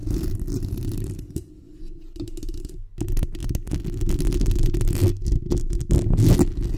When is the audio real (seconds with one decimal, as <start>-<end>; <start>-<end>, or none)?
1.5-6.8